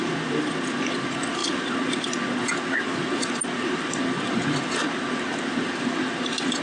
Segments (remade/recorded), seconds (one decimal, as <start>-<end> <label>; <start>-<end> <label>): 0.0-6.6 recorded